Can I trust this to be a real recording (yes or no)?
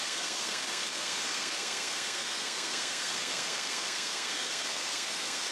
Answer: no